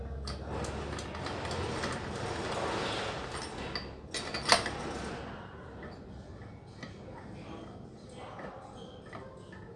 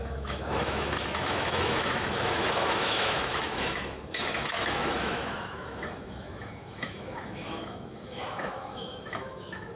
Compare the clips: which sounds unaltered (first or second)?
first